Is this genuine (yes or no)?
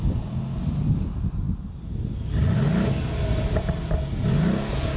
yes